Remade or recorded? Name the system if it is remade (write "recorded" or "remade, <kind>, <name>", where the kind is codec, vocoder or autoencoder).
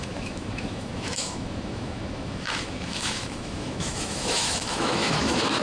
remade, autoencoder, DAC-VAE